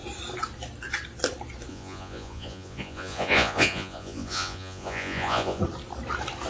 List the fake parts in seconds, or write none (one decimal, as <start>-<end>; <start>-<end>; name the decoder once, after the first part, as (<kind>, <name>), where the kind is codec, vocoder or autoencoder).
1.7-5.6 (vocoder, Vocos)